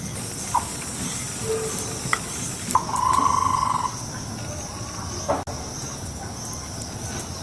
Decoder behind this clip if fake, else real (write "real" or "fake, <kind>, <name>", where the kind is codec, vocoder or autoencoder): real